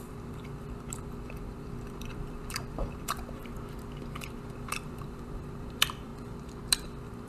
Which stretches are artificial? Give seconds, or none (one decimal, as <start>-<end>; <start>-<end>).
0.0-3.4; 4.5-6.1; 6.7-7.3